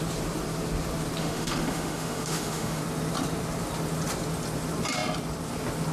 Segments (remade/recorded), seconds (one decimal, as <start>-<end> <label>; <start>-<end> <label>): 0.0-1.2 recorded; 1.2-2.8 remade; 2.8-5.9 recorded